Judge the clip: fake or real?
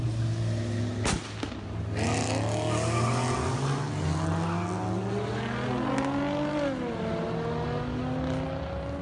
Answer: real